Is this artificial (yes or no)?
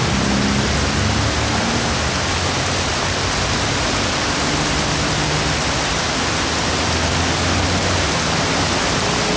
no